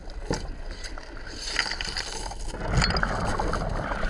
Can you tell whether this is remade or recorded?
recorded